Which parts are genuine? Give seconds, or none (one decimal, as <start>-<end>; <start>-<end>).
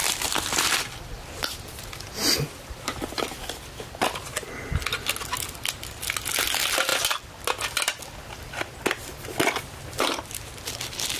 0.0-11.2